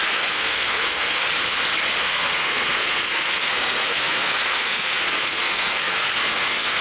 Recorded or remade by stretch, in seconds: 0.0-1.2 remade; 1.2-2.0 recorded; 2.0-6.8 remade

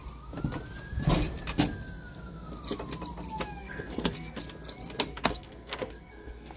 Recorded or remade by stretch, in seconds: 0.0-3.6 recorded; 3.6-4.4 remade; 4.4-5.1 recorded; 5.1-6.6 remade

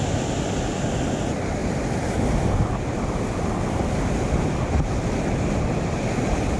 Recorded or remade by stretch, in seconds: 0.0-6.6 recorded

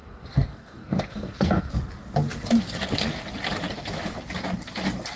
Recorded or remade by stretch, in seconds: 0.0-1.7 remade; 1.7-5.2 recorded

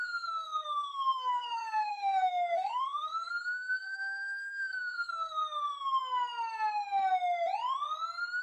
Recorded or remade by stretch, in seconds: 0.0-5.4 remade; 5.4-8.4 recorded

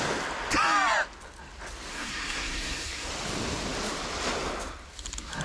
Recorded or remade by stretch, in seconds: 0.0-1.9 recorded; 1.9-3.1 remade; 3.1-5.4 recorded

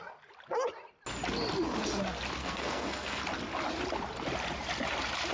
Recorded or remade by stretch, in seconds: 0.0-2.4 recorded; 2.4-3.2 remade; 3.2-5.3 recorded

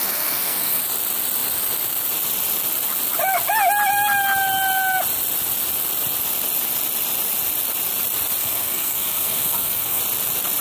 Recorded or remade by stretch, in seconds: 0.0-0.8 remade; 0.8-8.4 recorded; 8.4-10.0 remade; 10.0-10.6 recorded